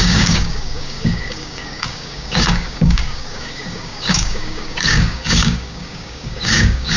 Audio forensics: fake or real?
fake